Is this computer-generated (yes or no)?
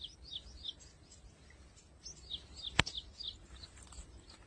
no